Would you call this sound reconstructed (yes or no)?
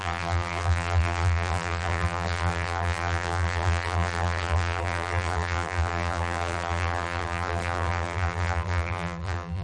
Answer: yes